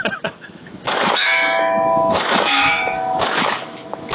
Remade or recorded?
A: remade